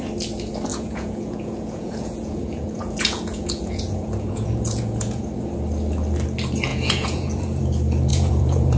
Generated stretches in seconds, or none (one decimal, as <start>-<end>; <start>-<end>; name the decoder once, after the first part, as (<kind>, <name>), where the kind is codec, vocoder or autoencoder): 0.7-5.3 (vocoder, Vocos); 6.7-7.6; 8.1-8.8